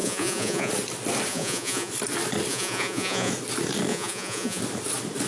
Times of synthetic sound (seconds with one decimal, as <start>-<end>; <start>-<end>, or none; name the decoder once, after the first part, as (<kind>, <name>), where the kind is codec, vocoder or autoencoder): 0.0-0.7 (vocoder, Vocos); 1.3-1.9; 2.5-3.3; 3.9-4.6